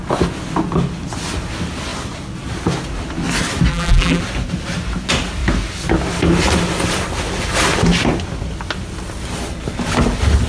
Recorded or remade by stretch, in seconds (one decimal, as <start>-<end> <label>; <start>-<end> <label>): 0.0-3.7 recorded; 3.7-4.2 remade; 4.2-10.5 recorded